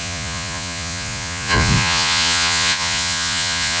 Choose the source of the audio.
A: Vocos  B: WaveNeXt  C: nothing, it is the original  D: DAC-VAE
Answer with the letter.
A